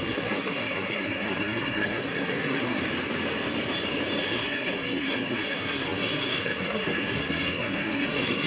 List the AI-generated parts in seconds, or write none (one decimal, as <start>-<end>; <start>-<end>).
0.0-2.8; 4.2-8.5